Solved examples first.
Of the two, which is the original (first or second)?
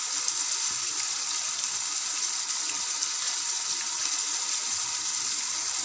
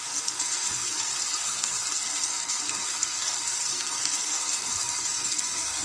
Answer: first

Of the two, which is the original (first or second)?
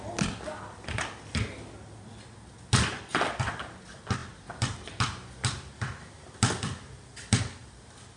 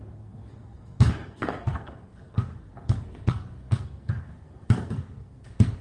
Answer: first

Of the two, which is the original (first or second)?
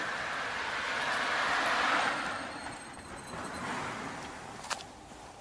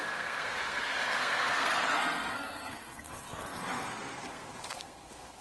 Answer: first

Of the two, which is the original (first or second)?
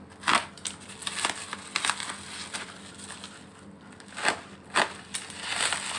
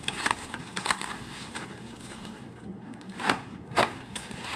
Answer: first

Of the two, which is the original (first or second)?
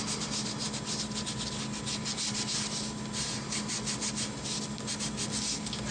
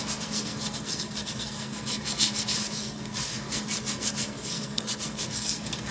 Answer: first